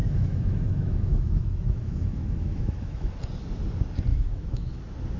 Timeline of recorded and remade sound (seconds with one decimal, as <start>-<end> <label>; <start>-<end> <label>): 0.0-3.1 remade; 3.1-4.1 recorded; 4.1-4.8 remade; 4.8-5.2 recorded

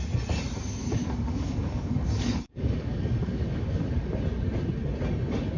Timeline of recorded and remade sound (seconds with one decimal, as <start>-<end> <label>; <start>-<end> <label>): 0.0-0.8 recorded; 0.8-4.2 remade; 4.2-5.6 recorded

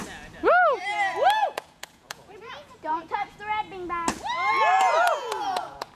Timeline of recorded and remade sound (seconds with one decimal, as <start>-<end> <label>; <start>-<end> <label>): 0.0-1.4 recorded; 1.4-3.4 remade; 3.4-4.7 recorded; 4.7-5.9 remade

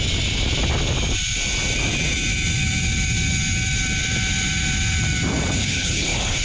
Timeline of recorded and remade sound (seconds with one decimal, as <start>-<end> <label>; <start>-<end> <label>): 0.0-5.6 recorded; 5.6-6.4 remade

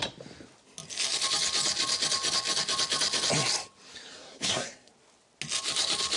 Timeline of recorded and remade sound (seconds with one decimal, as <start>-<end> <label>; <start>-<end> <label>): 0.0-4.1 recorded; 4.1-4.9 remade; 4.9-6.2 recorded